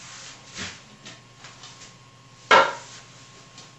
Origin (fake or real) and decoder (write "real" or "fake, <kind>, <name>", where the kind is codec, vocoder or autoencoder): real